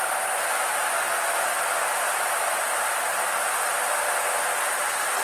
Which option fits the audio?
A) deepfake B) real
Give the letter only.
B